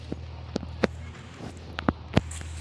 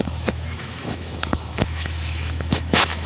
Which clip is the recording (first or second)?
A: first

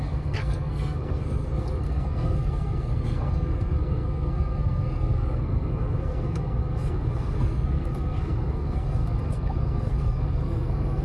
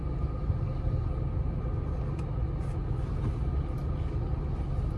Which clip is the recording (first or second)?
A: second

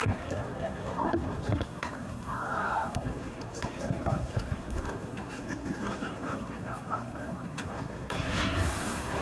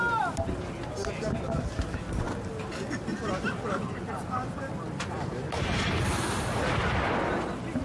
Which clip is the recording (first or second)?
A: second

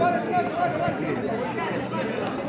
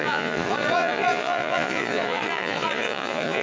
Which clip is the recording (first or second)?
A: first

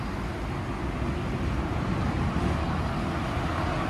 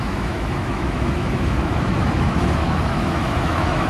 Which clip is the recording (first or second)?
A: first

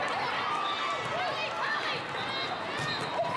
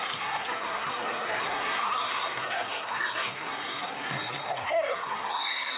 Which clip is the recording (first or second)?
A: first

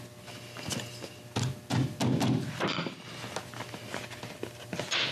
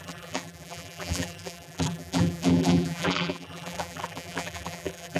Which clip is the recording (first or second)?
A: first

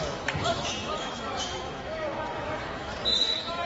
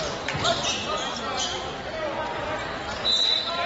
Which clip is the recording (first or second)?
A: second